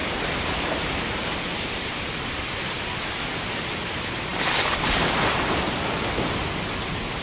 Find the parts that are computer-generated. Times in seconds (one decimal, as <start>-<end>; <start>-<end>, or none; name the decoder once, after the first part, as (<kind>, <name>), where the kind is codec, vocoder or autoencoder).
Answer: 0.0-0.6 (vocoder, BigVGAN v2); 1.2-2.8; 4.3-6.4